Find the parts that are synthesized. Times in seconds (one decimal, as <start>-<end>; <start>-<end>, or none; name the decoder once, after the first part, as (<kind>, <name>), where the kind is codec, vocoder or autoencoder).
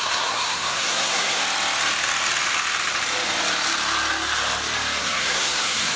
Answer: 0.0-1.4 (codec, SNAC); 5.0-6.0